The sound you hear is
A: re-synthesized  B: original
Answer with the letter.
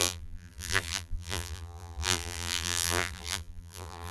A